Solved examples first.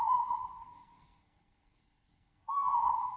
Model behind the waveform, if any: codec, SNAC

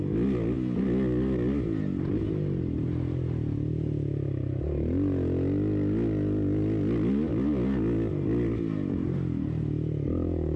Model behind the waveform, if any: none